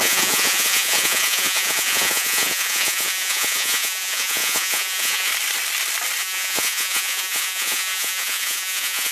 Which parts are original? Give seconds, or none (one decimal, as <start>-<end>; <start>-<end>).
5.3-6.2